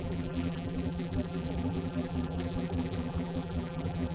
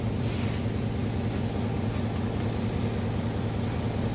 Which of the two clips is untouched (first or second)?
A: second